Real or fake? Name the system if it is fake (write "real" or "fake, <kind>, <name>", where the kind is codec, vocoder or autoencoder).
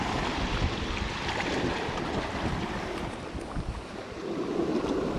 fake, vocoder, BigVGAN v2